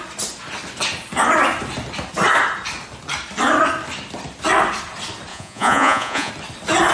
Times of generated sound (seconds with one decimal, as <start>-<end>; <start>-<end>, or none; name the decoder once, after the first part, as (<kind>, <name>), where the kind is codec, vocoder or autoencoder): 5.3-6.3 (vocoder, Vocos)